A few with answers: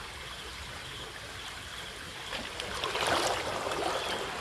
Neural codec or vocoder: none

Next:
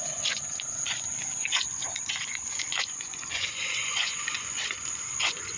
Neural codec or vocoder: vocoder, Vocos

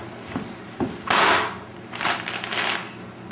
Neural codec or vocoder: none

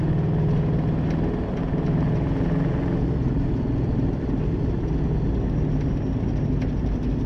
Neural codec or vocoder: none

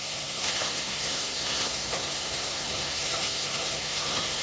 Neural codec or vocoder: codec, SNAC